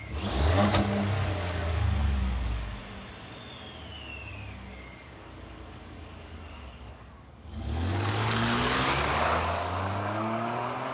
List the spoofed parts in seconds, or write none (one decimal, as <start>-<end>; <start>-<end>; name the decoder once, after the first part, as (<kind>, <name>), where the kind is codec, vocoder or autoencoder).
0.0-2.8 (codec, DAC); 4.3-10.9